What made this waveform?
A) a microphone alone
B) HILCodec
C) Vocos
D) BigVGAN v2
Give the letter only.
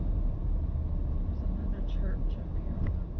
A